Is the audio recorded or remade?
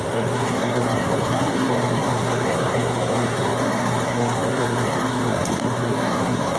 remade